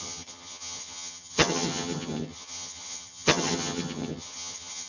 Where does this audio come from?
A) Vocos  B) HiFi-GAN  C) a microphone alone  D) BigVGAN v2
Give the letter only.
B